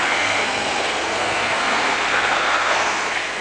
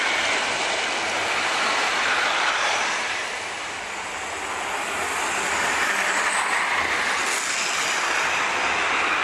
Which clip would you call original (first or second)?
second